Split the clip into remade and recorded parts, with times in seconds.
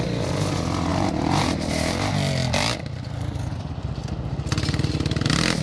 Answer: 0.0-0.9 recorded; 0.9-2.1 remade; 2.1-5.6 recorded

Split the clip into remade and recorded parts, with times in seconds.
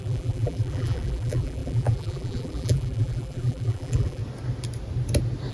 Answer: 0.0-4.2 remade; 4.2-5.5 recorded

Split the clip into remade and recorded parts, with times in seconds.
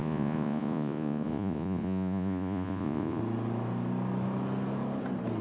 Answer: 0.0-3.2 remade; 3.2-5.4 recorded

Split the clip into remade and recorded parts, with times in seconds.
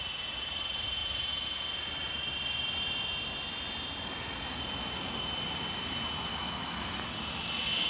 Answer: 0.0-6.3 recorded; 6.3-6.9 remade; 6.9-7.9 recorded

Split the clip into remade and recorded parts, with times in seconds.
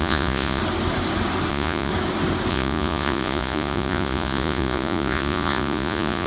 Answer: 0.0-0.6 remade; 0.6-1.5 recorded; 1.5-1.9 remade; 1.9-2.5 recorded; 2.5-6.3 remade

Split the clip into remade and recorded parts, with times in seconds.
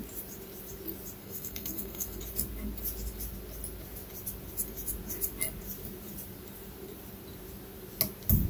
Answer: 0.0-1.2 recorded; 1.2-2.2 remade; 2.2-8.5 recorded